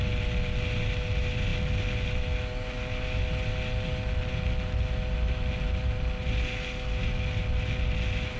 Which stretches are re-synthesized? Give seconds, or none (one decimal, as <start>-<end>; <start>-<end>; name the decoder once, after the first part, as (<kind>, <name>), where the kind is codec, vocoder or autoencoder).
none